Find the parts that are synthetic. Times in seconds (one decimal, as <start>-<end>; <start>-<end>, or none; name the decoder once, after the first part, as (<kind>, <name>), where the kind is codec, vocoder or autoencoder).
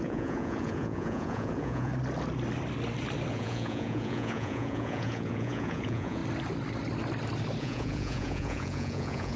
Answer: 0.0-1.9 (vocoder, Vocos); 3.3-6.2; 7.6-9.4